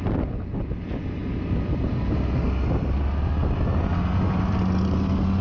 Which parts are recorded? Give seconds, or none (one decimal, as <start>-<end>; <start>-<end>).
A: 0.0-5.4